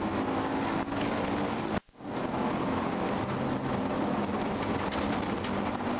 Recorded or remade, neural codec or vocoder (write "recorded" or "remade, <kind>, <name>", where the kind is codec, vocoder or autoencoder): recorded